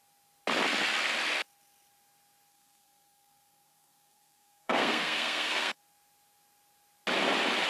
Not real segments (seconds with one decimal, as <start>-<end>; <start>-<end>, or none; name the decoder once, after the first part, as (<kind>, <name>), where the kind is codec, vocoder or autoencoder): 2.5-5.8 (codec, SNAC)